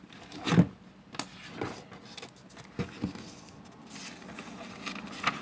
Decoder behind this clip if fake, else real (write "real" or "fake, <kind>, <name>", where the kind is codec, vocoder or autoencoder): real